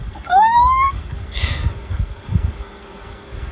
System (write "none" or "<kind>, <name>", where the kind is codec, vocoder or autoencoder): codec, SNAC